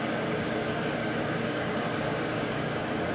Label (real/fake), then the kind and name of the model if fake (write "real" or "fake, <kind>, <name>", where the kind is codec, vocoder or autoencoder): fake, codec, DAC